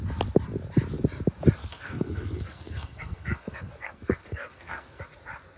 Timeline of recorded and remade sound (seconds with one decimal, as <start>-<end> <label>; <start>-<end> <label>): 0.0-1.6 recorded; 1.6-5.0 remade; 5.0-5.6 recorded